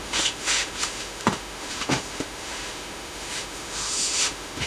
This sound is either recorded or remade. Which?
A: remade